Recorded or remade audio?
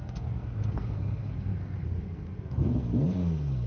remade